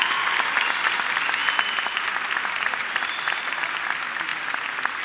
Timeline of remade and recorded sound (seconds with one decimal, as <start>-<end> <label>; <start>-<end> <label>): 0.0-5.0 recorded